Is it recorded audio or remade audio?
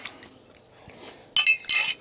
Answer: recorded